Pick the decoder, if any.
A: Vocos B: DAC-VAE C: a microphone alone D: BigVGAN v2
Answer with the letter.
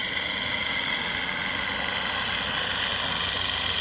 C